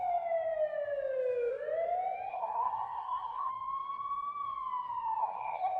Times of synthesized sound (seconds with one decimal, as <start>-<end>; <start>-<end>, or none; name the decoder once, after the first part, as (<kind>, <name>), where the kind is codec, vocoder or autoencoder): 2.3-3.5 (codec, SNAC); 5.2-5.8